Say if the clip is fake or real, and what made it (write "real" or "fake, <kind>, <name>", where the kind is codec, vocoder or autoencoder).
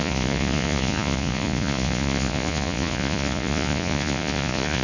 fake, vocoder, Vocos